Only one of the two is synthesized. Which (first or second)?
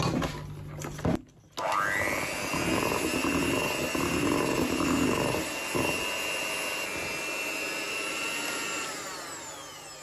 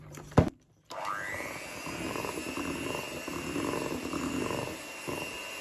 second